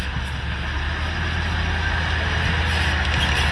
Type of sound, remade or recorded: recorded